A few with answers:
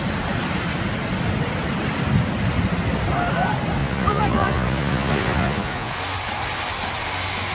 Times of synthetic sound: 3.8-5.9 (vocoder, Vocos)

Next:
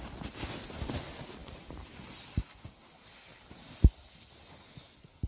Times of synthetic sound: none

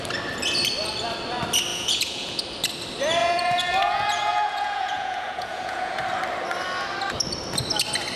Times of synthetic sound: 1.7-2.4 (vocoder, Vocos); 3.2-6.0

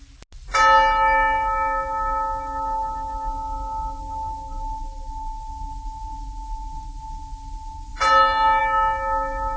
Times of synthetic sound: none

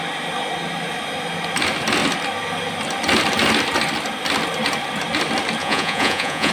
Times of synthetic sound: 5.6-6.5 (vocoder, Vocos)